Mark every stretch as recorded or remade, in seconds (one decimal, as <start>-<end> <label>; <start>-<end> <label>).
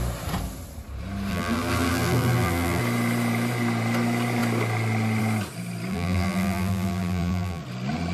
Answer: 0.0-1.3 recorded; 1.3-2.8 remade; 2.8-5.9 recorded; 5.9-7.6 remade; 7.6-8.1 recorded